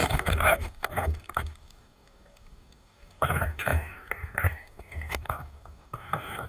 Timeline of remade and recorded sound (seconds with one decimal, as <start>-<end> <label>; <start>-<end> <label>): 0.0-6.5 remade